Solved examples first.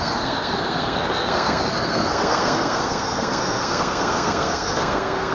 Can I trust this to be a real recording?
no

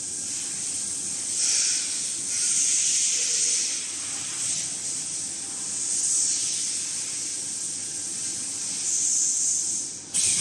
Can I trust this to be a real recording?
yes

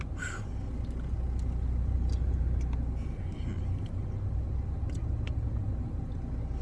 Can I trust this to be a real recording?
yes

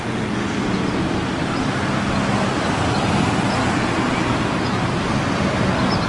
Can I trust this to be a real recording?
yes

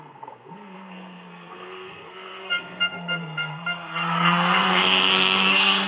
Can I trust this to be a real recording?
no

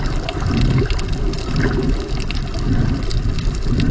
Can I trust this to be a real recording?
yes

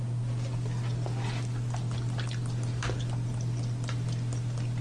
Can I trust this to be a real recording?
yes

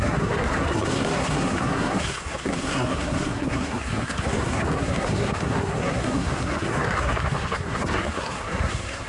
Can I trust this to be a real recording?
no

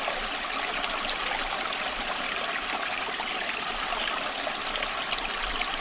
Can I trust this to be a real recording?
yes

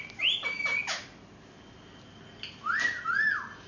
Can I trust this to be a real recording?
yes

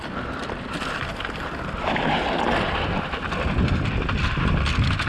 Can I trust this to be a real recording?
yes